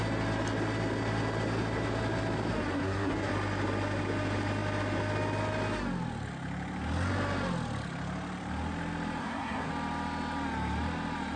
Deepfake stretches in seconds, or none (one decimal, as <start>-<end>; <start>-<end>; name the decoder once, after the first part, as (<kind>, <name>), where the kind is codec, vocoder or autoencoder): 2.7-3.3 (codec, SNAC); 9.2-9.7